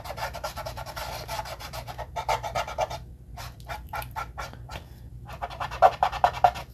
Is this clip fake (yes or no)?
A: yes